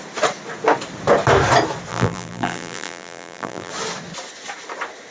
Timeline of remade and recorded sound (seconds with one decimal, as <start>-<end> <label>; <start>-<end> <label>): 0.0-1.9 recorded; 1.9-3.7 remade; 3.7-5.1 recorded